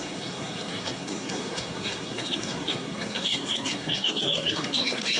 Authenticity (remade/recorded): remade